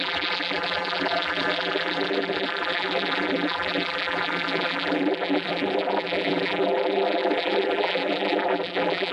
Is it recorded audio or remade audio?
remade